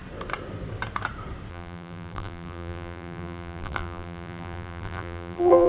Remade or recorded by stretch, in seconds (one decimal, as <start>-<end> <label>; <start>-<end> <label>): 0.0-1.5 recorded; 1.5-5.7 remade